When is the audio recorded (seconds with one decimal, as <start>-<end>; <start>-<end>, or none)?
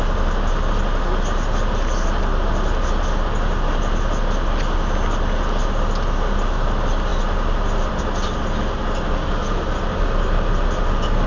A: 0.0-11.3